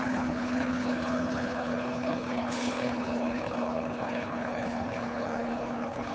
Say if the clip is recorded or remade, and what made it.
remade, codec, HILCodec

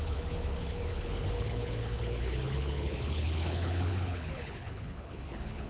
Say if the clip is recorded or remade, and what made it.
remade, codec, HILCodec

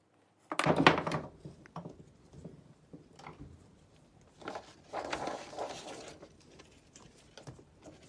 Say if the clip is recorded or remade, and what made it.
recorded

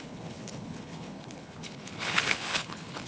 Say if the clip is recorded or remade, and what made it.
remade, codec, HILCodec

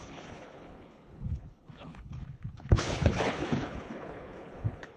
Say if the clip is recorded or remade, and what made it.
remade, codec, HILCodec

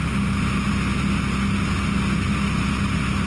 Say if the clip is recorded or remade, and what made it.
recorded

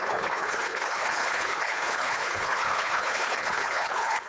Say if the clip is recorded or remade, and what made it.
remade, codec, HILCodec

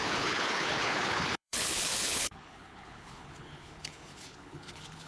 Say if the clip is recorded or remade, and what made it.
remade, codec, HILCodec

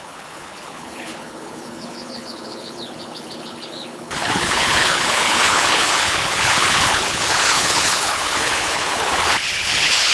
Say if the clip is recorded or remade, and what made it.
remade, codec, HILCodec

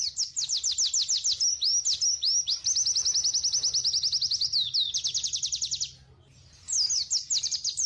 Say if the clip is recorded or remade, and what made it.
recorded